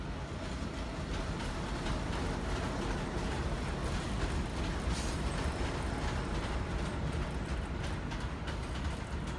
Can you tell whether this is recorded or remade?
recorded